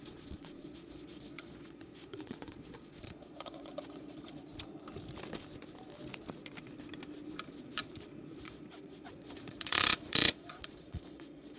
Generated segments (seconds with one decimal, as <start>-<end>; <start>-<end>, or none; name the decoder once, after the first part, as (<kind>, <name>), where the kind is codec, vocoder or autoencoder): 0.0-4.5 (vocoder, Vocos); 8.4-11.6